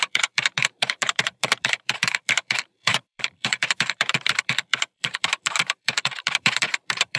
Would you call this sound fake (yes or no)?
yes